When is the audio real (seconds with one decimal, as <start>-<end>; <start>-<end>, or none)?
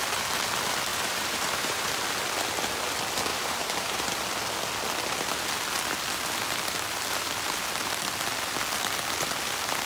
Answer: 0.0-0.9; 1.9-3.3; 4.1-9.9